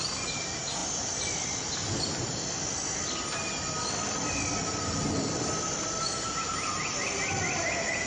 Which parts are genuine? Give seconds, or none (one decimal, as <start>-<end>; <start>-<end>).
0.0-8.1